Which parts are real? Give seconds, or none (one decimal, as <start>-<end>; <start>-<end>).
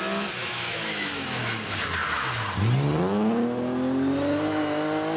0.0-0.4; 1.4-5.2